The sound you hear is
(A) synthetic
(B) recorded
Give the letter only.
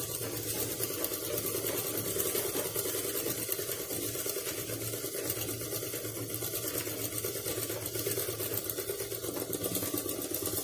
B